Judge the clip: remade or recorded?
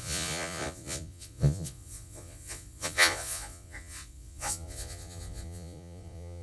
remade